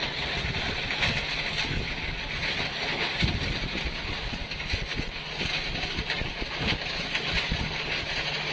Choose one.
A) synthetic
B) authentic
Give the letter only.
B